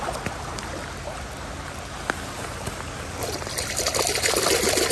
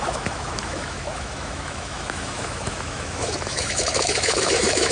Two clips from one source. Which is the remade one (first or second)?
second